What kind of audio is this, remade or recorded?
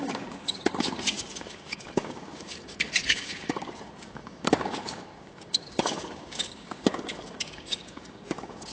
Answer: remade